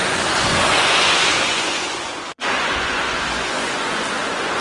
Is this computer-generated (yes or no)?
yes